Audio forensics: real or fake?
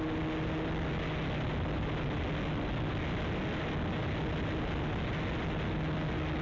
real